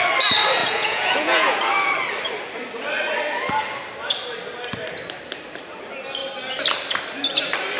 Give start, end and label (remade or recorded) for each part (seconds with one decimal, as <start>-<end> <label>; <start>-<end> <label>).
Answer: 0.0-0.6 recorded; 0.6-1.6 remade; 1.6-7.8 recorded